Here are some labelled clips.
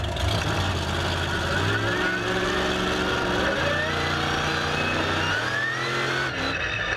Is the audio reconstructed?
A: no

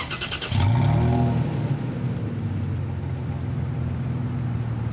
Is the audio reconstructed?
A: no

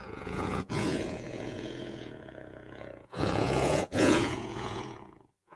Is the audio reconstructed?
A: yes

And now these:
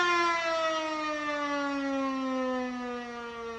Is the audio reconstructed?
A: no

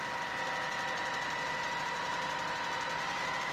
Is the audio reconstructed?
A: no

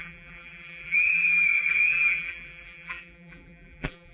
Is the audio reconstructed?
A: yes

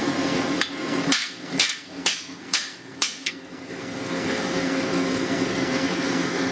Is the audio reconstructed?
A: yes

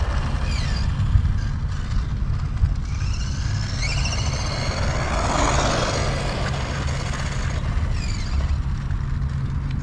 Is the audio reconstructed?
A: no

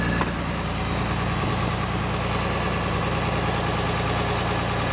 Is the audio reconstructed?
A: no